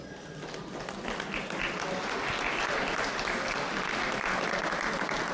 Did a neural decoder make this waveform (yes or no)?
no